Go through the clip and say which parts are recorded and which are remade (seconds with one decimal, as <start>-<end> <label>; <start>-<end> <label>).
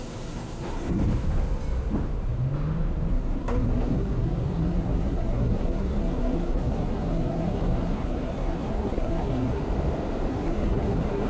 0.0-1.0 remade; 1.0-3.1 recorded; 3.1-9.6 remade; 9.6-10.3 recorded; 10.3-11.3 remade